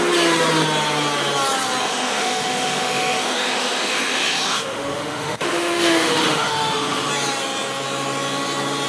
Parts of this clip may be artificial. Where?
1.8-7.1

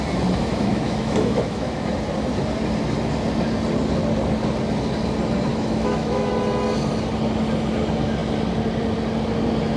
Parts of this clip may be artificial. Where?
0.4-1.9; 5.5-6.3